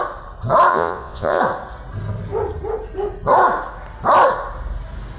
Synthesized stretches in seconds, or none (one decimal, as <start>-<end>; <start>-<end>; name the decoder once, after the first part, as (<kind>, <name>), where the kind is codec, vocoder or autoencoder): 0.7-1.4 (vocoder, Vocos)